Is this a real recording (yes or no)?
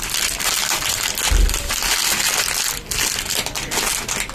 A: yes